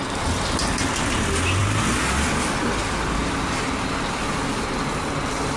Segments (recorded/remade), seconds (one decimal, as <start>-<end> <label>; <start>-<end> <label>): 0.0-5.6 recorded